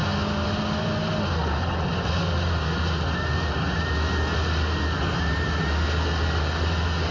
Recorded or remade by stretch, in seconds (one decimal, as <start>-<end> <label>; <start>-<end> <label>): 0.0-7.1 recorded